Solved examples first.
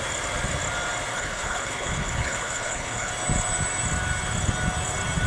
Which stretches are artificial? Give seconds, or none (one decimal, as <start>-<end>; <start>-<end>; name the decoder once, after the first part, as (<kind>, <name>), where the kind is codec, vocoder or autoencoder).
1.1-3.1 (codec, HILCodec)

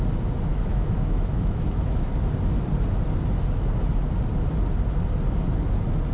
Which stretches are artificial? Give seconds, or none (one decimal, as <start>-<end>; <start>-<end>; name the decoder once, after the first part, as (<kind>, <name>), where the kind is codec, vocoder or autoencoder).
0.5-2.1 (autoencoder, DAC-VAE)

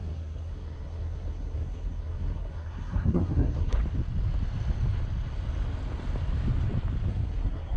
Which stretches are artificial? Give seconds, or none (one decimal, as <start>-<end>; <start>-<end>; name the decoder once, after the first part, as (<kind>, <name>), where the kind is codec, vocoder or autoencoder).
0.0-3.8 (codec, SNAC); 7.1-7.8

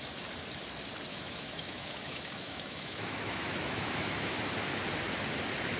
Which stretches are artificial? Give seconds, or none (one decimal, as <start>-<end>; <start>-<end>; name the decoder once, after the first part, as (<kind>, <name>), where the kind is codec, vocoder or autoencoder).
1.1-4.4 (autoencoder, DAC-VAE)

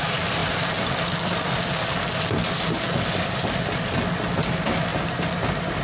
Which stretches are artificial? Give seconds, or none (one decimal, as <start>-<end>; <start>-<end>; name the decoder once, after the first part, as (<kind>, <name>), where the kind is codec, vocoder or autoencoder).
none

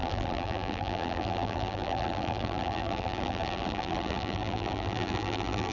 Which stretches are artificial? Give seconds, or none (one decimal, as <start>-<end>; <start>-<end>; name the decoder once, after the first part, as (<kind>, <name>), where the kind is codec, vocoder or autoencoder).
0.0-5.7 (vocoder, BigVGAN v2)